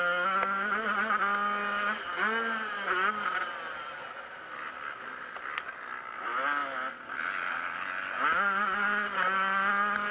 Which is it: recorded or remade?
recorded